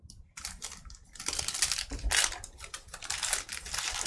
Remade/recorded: recorded